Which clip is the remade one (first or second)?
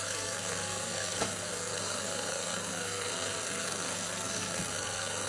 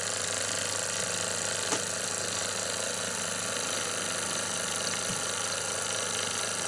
first